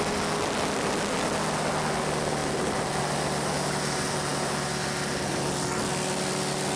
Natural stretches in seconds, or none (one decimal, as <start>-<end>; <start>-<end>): 0.0-2.4; 3.0-6.8